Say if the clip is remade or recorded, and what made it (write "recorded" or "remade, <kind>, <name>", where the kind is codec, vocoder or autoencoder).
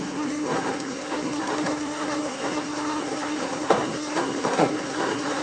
remade, codec, SNAC